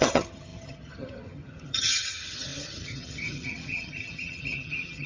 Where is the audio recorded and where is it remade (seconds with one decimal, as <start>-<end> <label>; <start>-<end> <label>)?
0.0-5.1 remade